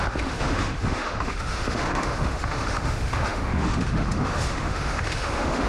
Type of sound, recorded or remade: remade